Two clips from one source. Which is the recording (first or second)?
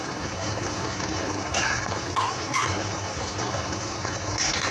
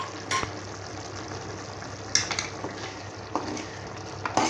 second